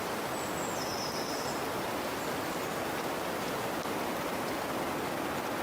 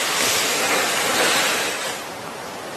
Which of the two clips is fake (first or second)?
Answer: second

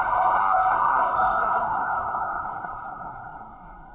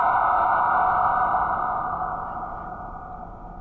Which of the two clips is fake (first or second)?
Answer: first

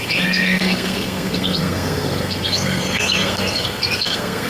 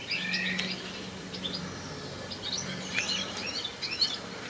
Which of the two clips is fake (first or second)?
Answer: first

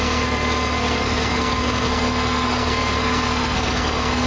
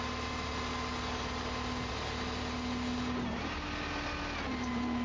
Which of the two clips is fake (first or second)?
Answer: first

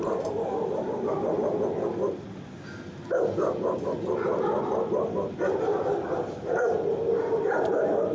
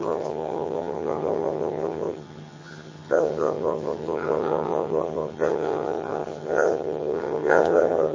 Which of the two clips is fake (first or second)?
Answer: second